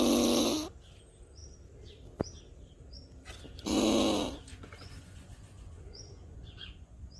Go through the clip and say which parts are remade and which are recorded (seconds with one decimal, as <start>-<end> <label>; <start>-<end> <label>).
0.0-4.5 recorded; 4.5-7.2 remade